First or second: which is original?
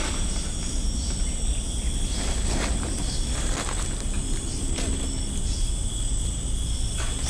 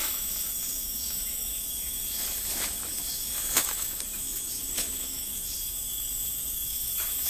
first